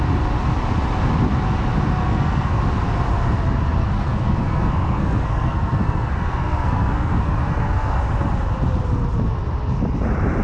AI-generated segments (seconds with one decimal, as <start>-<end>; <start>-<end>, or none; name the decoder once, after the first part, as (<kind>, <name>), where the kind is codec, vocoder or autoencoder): 2.0-2.6 (codec, SNAC); 3.8-8.0